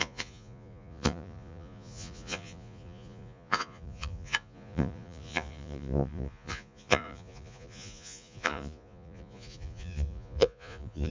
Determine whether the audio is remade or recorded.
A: remade